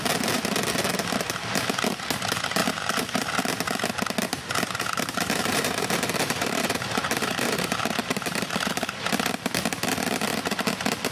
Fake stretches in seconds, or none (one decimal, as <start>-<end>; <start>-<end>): 2.6-3.2; 4.2-9.1